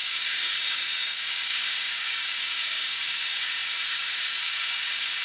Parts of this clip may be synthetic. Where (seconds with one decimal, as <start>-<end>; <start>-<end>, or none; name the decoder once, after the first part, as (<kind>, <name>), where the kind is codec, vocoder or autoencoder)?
0.0-5.2 (codec, DAC)